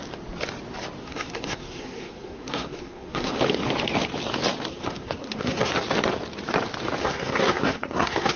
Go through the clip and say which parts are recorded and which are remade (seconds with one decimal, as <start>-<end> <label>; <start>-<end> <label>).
0.0-1.0 recorded; 1.0-3.3 remade; 3.3-4.7 recorded; 4.7-5.7 remade; 5.7-7.0 recorded; 7.0-8.4 remade